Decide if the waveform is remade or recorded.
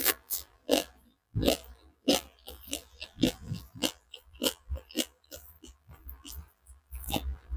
remade